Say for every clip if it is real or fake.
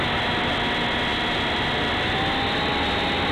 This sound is real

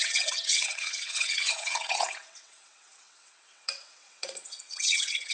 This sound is fake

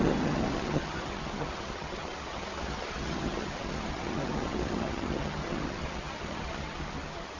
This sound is fake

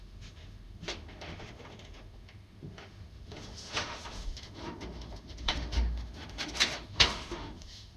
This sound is fake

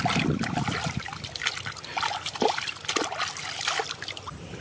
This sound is real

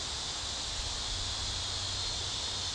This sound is real